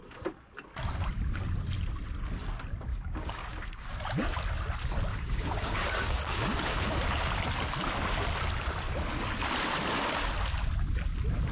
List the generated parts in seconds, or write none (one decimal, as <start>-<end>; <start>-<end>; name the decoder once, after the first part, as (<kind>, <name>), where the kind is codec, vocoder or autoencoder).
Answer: 2.9-3.9 (codec, DAC); 5.1-7.0